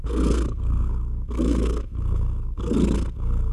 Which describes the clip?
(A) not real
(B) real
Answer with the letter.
A